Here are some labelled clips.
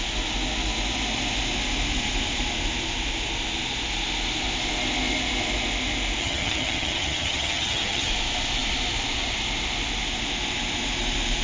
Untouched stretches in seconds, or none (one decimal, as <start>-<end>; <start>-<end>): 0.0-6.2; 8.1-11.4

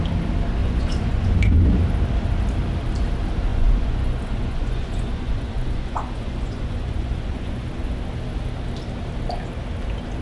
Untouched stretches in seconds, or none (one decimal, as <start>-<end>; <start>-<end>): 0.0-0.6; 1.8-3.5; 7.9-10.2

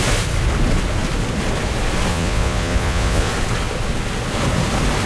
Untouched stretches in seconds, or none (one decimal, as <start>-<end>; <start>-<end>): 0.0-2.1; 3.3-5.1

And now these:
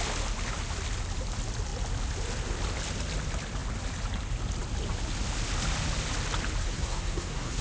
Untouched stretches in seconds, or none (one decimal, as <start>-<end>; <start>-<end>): 0.0-6.6

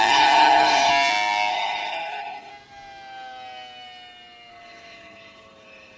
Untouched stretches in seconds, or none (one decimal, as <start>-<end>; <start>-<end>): 0.9-1.5; 2.5-4.5